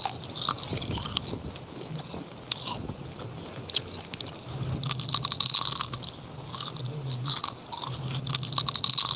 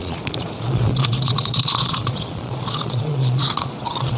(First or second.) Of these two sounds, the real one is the first